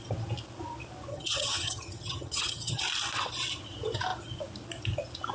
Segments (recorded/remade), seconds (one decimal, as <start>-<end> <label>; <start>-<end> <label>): 0.0-1.1 recorded; 1.1-2.8 remade; 2.8-5.3 recorded

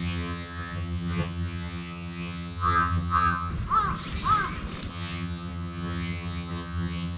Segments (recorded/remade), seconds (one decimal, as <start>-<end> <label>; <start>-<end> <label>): 0.0-3.5 remade; 3.5-4.9 recorded; 4.9-7.2 remade

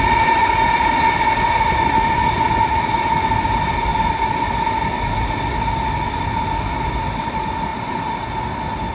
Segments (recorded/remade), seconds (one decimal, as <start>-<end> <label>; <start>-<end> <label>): 0.0-8.9 recorded